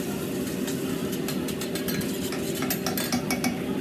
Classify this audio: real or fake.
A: real